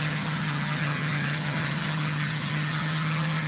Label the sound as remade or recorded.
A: remade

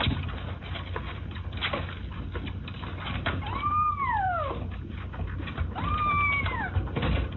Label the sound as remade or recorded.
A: recorded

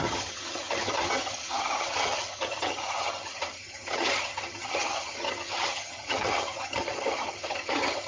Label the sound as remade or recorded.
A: remade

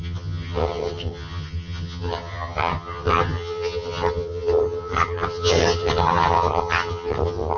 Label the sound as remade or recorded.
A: remade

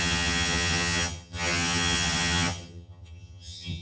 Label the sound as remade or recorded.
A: remade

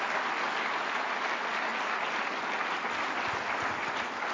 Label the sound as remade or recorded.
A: recorded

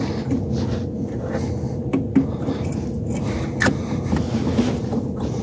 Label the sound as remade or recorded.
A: recorded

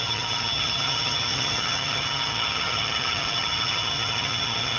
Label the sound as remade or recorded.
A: remade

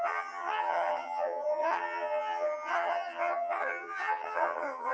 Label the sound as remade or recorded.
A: remade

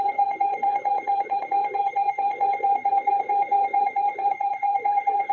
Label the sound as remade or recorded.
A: remade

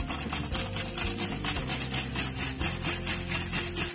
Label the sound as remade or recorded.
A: recorded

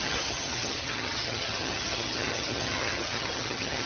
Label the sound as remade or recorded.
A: remade